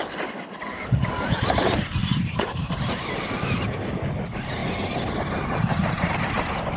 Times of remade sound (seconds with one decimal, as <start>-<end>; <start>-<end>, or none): 2.0-3.9